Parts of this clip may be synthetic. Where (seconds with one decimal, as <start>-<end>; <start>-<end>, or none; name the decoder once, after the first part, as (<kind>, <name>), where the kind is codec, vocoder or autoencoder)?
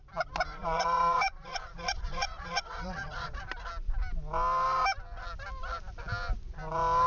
0.5-3.4 (vocoder, Vocos)